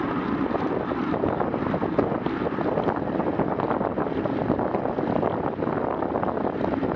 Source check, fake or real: real